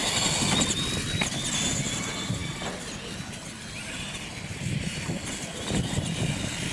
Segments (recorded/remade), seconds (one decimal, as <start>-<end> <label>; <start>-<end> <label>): 0.0-6.7 recorded